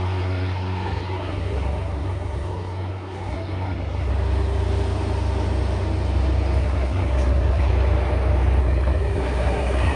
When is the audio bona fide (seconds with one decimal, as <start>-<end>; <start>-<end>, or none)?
4.1-6.6; 7.7-8.6